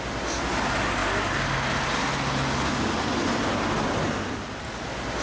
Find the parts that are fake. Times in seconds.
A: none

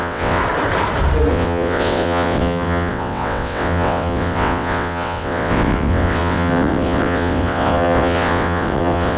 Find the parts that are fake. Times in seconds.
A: 0.0-0.4 (vocoder, WaveNeXt); 1.3-9.2

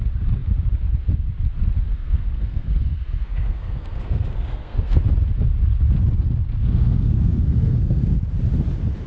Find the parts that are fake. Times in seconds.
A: 1.9-5.0 (codec, SNAC); 6.6-8.2

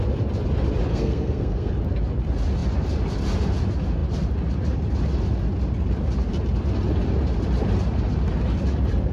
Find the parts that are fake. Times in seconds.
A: 0.9-1.7 (codec, SNAC)

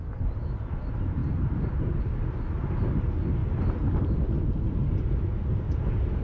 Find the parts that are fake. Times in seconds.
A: none